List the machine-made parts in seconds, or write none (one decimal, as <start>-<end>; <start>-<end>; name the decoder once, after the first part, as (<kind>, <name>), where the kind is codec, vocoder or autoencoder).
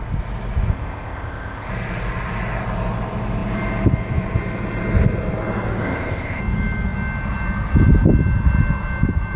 0.7-1.7 (codec, ZipCodec); 5.8-6.4